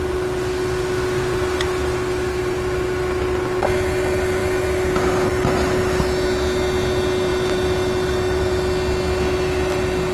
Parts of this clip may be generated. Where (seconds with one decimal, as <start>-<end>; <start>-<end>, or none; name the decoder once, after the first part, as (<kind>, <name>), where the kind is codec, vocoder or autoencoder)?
none